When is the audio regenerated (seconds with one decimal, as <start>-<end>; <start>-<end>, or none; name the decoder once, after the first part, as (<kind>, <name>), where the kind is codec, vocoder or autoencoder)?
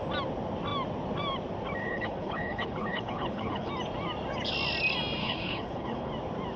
1.8-3.7 (codec, HILCodec); 5.2-6.1